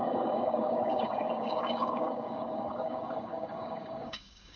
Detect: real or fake fake